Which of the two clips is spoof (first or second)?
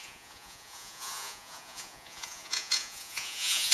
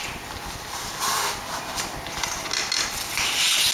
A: first